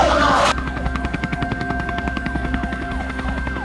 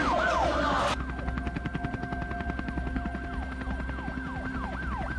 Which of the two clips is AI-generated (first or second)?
first